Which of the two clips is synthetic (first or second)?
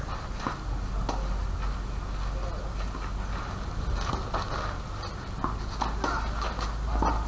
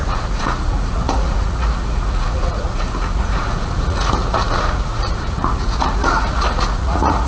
second